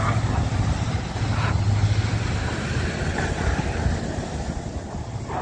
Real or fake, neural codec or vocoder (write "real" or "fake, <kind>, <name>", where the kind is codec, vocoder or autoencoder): real